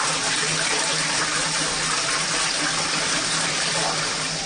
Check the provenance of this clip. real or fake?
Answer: real